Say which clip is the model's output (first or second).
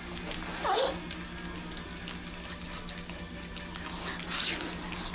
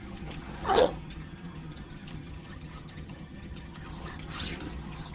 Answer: second